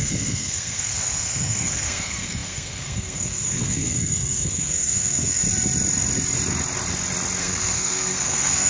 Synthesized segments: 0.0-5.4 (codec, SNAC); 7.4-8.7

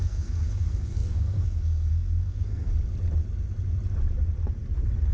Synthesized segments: 0.0-2.7 (codec, SNAC)